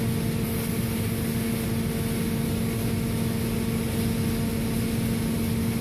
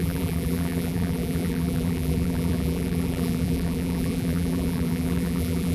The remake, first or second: second